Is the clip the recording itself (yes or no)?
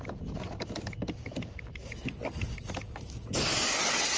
yes